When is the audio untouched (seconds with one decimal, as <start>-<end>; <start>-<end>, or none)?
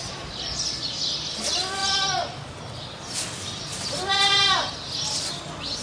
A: 0.0-5.8